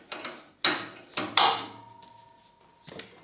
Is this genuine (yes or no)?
yes